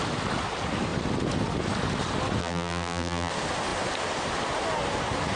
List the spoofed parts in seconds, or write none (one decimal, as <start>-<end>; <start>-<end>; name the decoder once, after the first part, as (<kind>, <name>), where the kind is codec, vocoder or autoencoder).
2.4-3.3 (vocoder, BigVGAN v2)